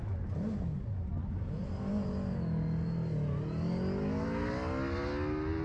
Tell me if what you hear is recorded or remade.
recorded